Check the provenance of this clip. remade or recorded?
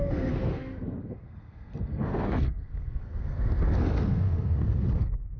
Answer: remade